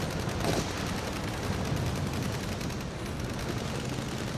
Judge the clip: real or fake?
real